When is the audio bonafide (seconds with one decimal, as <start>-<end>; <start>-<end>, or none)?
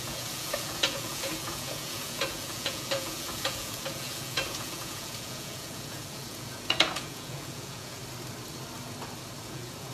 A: 8.0-9.4